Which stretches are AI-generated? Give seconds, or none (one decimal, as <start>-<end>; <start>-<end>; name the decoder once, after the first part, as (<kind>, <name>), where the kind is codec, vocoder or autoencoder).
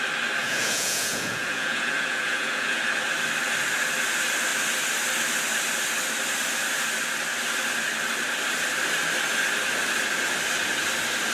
0.4-2.8 (vocoder, Vocos)